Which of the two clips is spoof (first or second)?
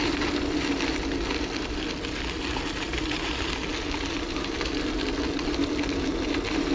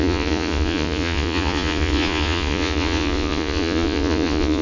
second